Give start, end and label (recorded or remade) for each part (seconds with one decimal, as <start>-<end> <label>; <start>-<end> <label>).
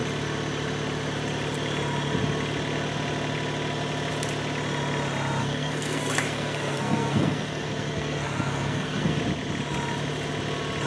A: 0.0-5.4 recorded; 5.4-9.2 remade; 9.2-10.9 recorded